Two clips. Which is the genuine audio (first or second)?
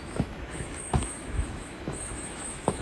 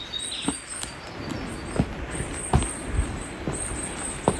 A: second